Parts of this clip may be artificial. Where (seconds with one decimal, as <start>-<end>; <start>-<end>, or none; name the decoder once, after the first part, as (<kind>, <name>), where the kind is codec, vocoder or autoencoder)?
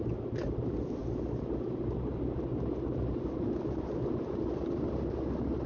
none